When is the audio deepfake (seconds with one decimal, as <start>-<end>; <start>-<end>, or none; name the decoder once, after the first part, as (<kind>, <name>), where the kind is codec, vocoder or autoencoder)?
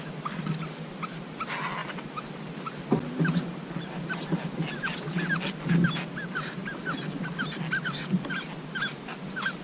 none